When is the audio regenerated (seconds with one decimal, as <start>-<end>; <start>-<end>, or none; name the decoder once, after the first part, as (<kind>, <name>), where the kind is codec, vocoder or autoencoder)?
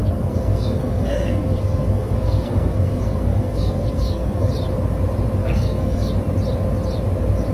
0.0-4.5 (codec, SNAC); 5.4-6.1